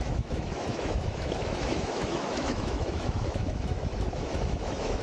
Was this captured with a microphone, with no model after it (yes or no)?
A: no